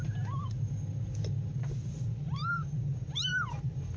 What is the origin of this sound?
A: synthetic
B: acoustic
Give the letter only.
B